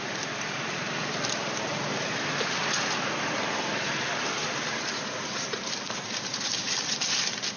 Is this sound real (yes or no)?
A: yes